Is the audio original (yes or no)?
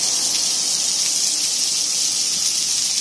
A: yes